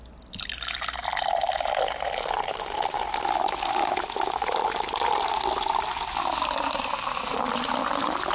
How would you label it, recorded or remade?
recorded